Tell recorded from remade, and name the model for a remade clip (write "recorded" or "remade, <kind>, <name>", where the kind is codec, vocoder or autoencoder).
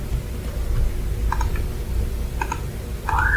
recorded